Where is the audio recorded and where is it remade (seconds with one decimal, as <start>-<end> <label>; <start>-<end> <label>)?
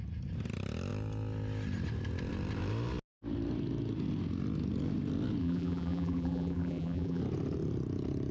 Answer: 0.0-5.4 recorded; 5.4-7.2 remade; 7.2-8.3 recorded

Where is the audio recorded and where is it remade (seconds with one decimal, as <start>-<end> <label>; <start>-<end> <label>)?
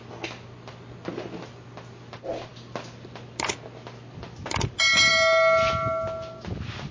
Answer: 0.0-6.9 recorded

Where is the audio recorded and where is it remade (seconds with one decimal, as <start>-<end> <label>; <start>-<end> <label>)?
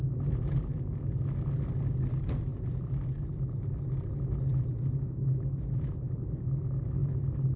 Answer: 0.0-7.6 recorded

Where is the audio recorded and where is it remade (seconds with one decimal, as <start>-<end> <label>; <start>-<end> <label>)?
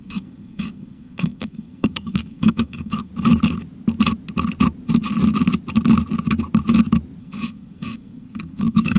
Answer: 0.0-3.1 remade; 3.1-7.2 recorded; 7.2-9.0 remade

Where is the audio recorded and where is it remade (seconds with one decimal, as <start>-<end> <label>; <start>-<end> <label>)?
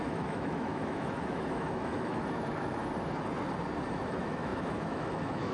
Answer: 0.0-2.8 remade; 2.8-3.9 recorded; 3.9-5.5 remade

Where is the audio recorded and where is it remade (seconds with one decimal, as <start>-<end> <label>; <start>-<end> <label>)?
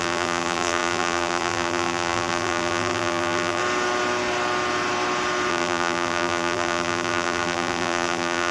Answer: 0.0-3.6 remade; 3.6-5.5 recorded; 5.5-8.5 remade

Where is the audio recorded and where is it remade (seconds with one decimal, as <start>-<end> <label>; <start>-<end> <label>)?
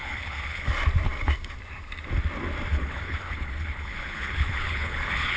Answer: 0.0-0.7 remade; 0.7-2.7 recorded; 2.7-5.4 remade